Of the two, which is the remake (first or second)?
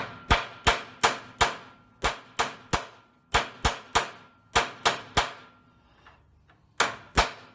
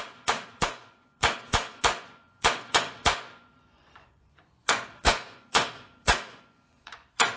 second